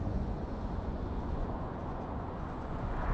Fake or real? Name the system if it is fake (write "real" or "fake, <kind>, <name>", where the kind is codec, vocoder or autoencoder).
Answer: fake, vocoder, Vocos